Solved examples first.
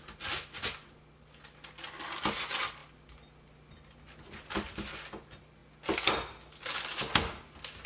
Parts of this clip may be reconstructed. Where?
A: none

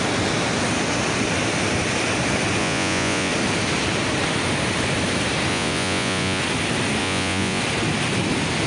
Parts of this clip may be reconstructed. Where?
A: 2.6-3.3; 5.5-6.4; 7.0-7.6

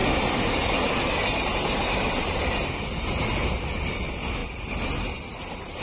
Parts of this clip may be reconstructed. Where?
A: 0.0-0.6; 1.5-3.3; 4.4-5.8

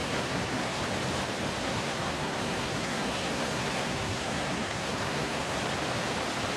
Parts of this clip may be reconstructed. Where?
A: 0.0-0.8; 1.6-5.6

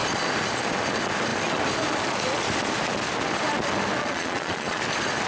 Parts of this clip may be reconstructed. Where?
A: 4.0-4.8

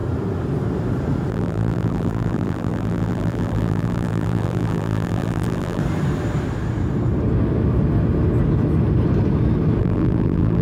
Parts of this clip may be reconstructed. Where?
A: 1.3-5.8; 9.8-10.6

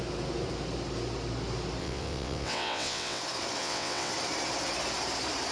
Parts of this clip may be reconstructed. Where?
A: 1.8-3.2; 3.6-4.1